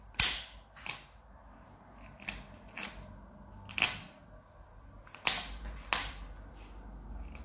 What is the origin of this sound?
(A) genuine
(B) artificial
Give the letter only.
A